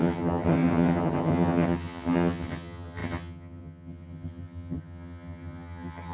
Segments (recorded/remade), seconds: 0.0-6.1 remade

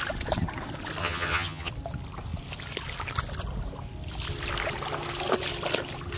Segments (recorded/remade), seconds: 0.0-1.0 recorded; 1.0-1.7 remade; 1.7-6.2 recorded

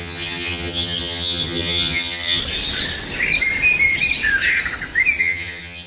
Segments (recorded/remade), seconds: 0.0-2.4 remade; 2.4-5.2 recorded; 5.2-5.9 remade

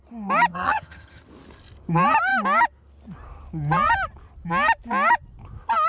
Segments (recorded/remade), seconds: 0.0-0.5 recorded; 0.5-1.2 remade; 1.2-5.9 recorded

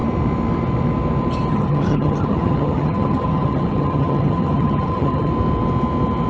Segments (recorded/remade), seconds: 0.0-1.5 recorded; 1.5-5.3 remade; 5.3-6.3 recorded

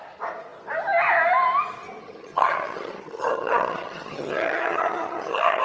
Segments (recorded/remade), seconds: 0.0-2.0 recorded; 2.0-5.6 remade

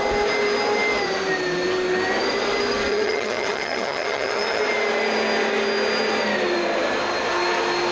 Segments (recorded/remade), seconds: 0.0-2.9 recorded; 2.9-4.6 remade; 4.6-7.9 recorded